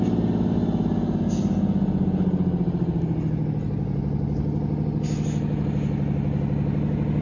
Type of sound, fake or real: real